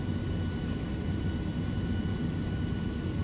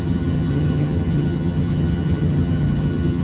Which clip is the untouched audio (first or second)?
first